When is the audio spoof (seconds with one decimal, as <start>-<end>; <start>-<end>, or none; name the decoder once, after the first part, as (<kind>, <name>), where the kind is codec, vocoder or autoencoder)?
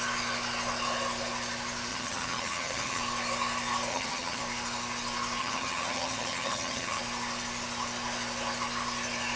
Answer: 1.9-3.0 (vocoder, HiFi-GAN); 3.9-4.4; 5.4-7.0